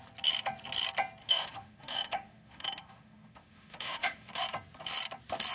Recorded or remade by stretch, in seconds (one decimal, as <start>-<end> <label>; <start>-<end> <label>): 0.0-1.2 recorded; 1.2-4.4 remade; 4.4-5.5 recorded